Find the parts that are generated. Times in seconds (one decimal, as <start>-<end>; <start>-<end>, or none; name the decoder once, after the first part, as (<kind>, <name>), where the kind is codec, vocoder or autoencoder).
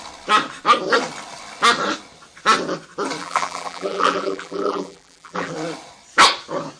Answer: 3.2-5.5 (vocoder, BigVGAN v2)